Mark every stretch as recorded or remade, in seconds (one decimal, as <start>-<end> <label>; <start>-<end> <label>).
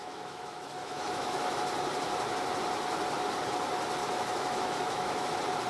0.0-1.6 remade; 1.6-4.0 recorded; 4.0-5.3 remade; 5.3-5.7 recorded